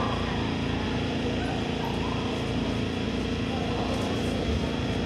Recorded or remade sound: recorded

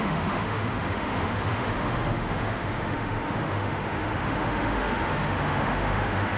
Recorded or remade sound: remade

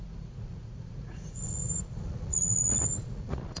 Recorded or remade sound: remade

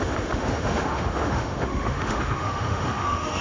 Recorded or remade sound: remade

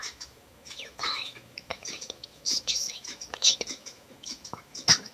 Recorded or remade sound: remade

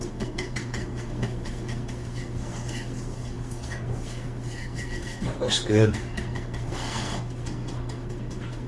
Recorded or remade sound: remade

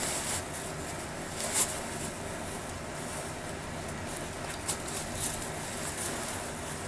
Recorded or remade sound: recorded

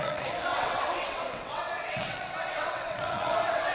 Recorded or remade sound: remade